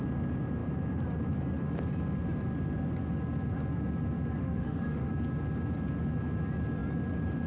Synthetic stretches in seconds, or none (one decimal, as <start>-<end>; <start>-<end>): 4.4-5.1

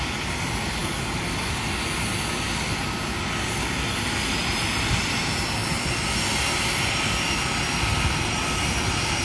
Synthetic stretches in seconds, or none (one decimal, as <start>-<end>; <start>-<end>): none

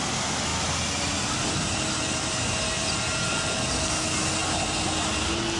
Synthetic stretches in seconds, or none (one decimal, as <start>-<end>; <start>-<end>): 0.5-3.9

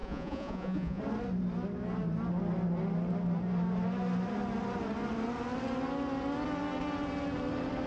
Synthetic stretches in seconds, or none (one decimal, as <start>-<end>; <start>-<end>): 0.0-1.0

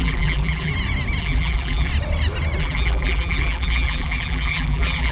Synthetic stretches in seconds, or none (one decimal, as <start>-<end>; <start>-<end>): 0.0-0.7; 1.2-1.9; 2.6-5.1

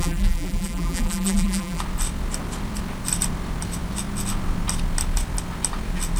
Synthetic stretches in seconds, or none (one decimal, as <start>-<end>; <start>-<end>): 0.0-1.8

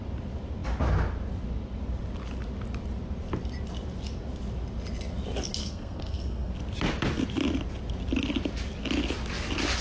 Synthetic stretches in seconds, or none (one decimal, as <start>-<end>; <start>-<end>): 5.6-6.5

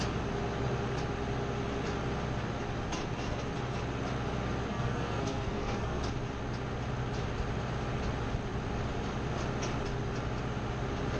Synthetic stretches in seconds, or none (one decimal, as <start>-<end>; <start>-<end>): 4.7-6.0